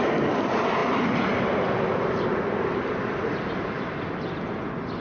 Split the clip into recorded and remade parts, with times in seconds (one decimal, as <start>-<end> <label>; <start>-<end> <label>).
0.0-5.0 recorded